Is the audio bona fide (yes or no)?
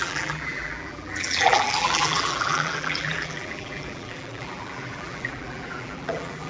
no